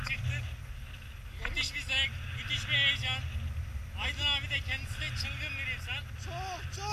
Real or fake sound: real